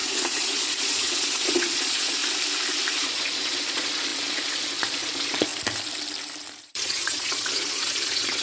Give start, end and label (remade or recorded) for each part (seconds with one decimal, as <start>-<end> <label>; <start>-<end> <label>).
0.0-2.2 remade; 2.2-3.0 recorded; 3.0-5.5 remade; 5.5-6.6 recorded; 6.6-8.4 remade